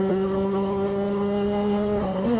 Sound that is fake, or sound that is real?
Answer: fake